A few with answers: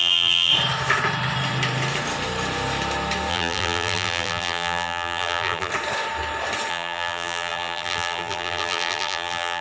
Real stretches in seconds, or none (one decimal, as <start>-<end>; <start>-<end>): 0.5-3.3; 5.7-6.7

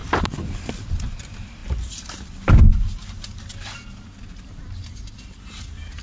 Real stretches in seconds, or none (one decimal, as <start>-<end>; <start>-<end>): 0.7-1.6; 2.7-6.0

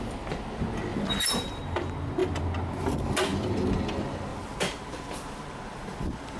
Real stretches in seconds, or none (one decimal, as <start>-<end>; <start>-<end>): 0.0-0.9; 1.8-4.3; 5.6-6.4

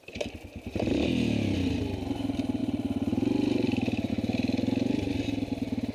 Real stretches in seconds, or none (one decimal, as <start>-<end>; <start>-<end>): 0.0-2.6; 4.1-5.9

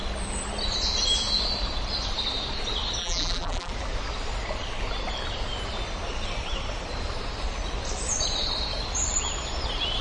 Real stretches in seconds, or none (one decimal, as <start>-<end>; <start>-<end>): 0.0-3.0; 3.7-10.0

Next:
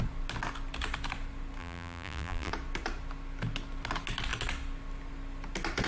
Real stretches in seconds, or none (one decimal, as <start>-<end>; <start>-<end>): 0.0-1.6; 2.5-5.9

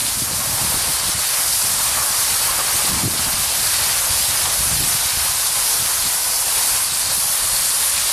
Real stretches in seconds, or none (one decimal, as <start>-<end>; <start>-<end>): 0.0-6.0; 7.4-8.1